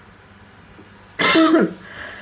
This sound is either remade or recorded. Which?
recorded